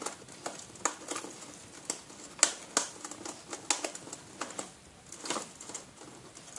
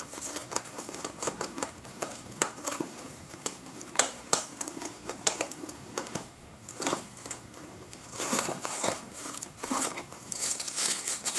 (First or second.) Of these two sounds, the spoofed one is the second